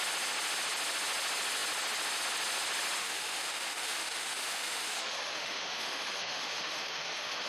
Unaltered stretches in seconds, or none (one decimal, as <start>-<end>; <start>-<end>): 0.0-3.0